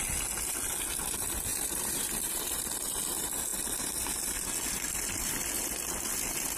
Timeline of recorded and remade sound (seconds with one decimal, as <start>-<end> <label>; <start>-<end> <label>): 0.0-1.5 recorded; 1.5-2.4 remade; 2.4-6.6 recorded